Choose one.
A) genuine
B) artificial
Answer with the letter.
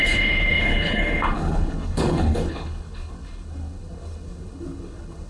B